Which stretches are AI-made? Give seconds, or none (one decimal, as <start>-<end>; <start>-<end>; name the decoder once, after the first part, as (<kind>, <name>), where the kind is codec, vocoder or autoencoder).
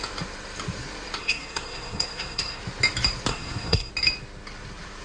1.2-2.6 (codec, SNAC); 3.3-3.9